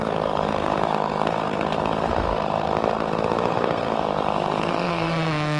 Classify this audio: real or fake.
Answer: fake